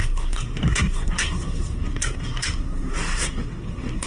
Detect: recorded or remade remade